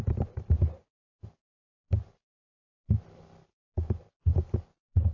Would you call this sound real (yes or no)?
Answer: yes